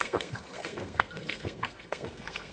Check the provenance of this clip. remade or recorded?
remade